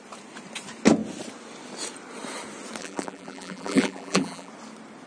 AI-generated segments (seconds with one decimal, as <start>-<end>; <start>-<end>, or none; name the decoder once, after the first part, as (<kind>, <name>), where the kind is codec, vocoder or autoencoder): 2.8-4.5 (vocoder, BigVGAN v2)